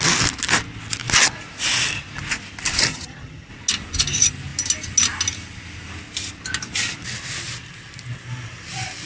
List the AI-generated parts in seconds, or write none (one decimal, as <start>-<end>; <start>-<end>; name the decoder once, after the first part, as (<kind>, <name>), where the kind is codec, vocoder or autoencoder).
2.9-3.5 (vocoder, HiFi-GAN)